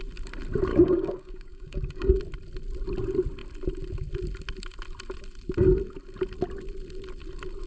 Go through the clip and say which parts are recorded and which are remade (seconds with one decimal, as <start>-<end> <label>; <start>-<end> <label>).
0.0-0.7 recorded; 0.7-2.2 remade; 2.2-7.7 recorded